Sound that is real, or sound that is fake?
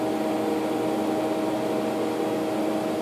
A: real